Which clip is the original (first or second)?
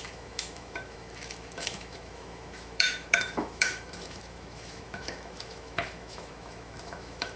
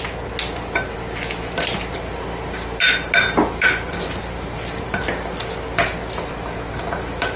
second